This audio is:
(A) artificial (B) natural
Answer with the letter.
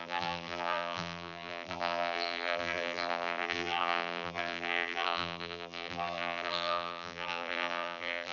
A